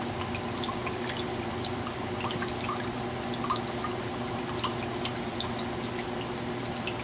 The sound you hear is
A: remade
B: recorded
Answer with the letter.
B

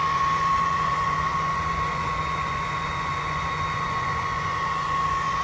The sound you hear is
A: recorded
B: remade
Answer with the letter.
B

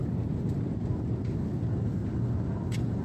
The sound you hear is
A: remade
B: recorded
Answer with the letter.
B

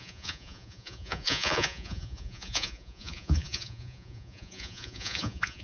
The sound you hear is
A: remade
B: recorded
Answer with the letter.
A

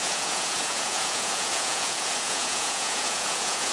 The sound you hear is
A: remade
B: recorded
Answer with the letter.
A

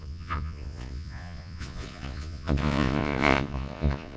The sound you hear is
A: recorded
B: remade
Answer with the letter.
B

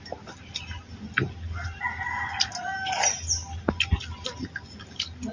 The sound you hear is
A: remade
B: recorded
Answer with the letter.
B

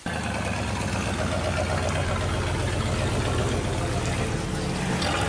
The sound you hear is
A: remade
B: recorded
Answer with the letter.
B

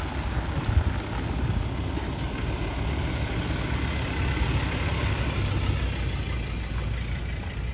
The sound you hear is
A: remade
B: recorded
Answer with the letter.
B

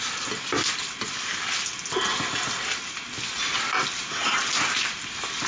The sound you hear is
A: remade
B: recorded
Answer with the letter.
B